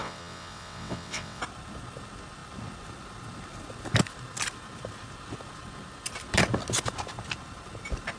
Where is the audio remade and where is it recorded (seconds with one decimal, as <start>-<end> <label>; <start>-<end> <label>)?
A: 0.0-1.4 remade; 1.4-8.2 recorded